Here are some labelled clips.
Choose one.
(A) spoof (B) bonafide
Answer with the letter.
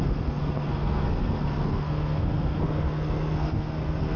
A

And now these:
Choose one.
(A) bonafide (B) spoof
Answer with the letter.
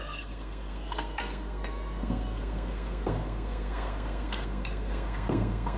B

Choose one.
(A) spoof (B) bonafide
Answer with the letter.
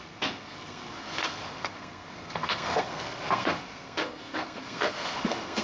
A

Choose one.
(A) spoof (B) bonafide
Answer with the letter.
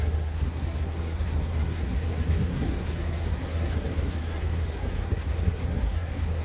A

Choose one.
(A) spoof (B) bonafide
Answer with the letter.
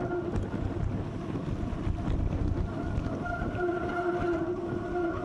B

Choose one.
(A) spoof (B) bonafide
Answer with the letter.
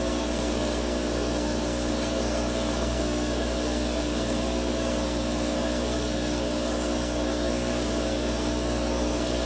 A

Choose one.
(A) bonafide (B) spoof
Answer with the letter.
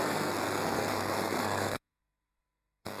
B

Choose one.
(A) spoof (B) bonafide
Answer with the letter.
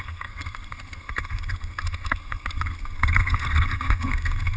A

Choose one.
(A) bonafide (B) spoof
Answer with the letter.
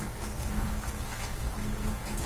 B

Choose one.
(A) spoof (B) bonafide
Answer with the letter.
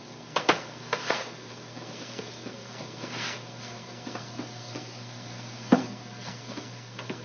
A